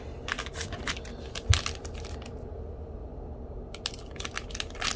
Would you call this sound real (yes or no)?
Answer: yes